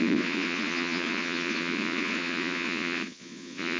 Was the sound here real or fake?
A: fake